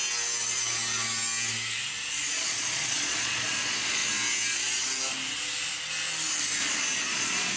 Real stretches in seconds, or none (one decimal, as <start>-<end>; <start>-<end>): 0.0-2.1; 4.0-7.1